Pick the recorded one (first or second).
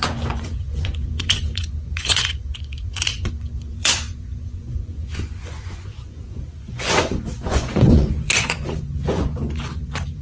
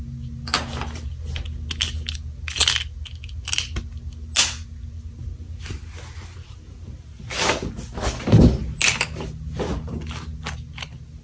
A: second